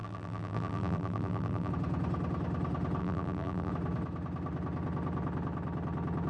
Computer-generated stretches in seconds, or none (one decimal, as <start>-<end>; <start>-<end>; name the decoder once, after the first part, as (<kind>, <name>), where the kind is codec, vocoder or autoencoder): 0.0-1.7 (vocoder, BigVGAN v2); 3.0-3.7